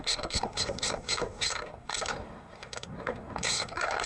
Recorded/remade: remade